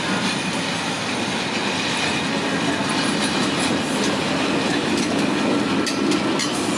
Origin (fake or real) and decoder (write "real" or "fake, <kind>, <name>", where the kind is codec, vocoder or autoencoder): real